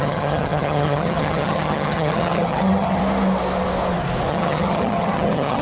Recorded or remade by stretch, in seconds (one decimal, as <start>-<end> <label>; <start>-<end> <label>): 0.0-3.0 remade; 3.0-4.3 recorded; 4.3-5.6 remade